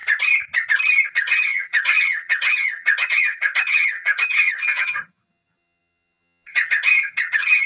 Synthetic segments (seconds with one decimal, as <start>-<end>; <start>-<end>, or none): 1.1-7.7